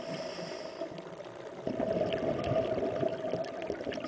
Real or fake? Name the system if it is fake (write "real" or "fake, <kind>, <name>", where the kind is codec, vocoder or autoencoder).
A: real